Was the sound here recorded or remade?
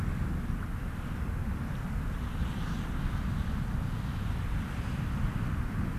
recorded